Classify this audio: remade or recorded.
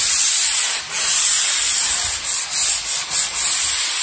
recorded